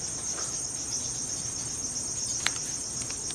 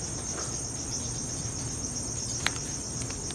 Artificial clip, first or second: first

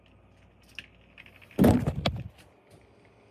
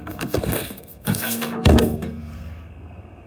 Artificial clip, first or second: second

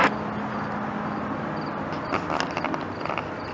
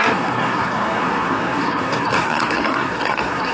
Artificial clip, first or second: second